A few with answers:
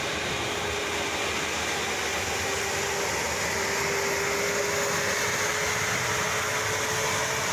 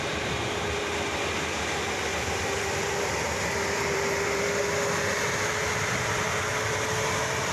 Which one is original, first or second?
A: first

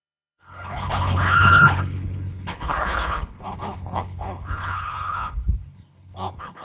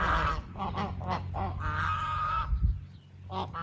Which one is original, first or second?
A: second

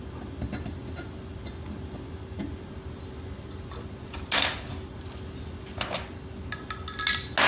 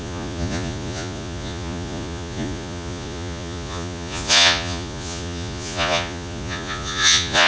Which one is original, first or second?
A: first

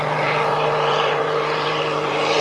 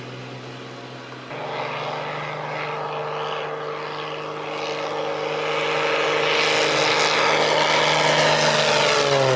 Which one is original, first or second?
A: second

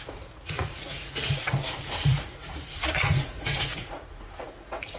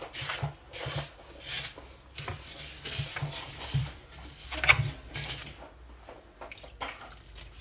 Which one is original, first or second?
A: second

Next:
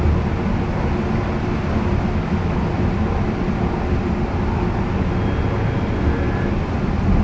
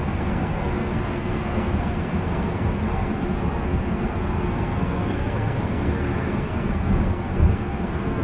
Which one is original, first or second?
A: first